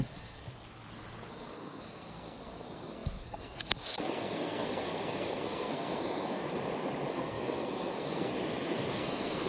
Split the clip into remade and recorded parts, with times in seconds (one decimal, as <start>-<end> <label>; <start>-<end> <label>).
0.0-0.4 remade; 0.4-1.3 recorded; 1.3-6.4 remade; 6.4-7.1 recorded; 7.1-8.3 remade; 8.3-8.9 recorded; 8.9-9.5 remade